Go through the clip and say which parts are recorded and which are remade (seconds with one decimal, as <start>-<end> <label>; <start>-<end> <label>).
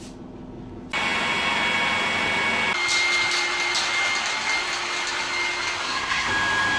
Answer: 0.0-5.8 recorded; 5.8-6.3 remade; 6.3-6.8 recorded